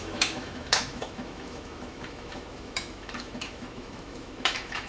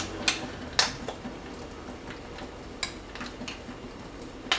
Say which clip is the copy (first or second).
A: first